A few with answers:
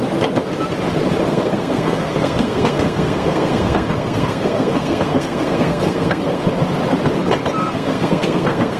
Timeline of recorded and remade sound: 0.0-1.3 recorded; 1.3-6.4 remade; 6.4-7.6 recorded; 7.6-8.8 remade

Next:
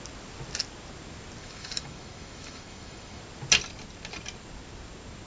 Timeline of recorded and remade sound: 0.0-1.4 recorded; 1.4-3.2 remade; 3.2-5.3 recorded

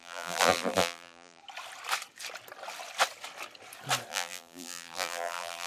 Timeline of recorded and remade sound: 0.0-1.4 remade; 1.4-4.1 recorded; 4.1-5.7 remade

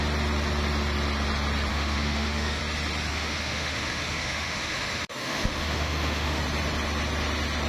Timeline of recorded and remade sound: 0.0-1.7 recorded; 1.7-2.6 remade; 2.6-3.1 recorded; 3.1-6.4 remade; 6.4-7.7 recorded

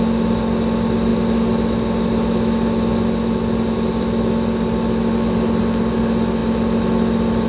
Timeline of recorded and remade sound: 0.0-7.5 recorded